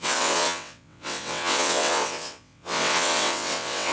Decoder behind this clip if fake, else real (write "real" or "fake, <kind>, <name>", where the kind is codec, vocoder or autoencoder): fake, vocoder, WaveNeXt